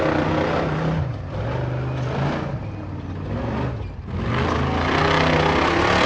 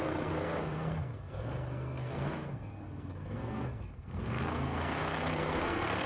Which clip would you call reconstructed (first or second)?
second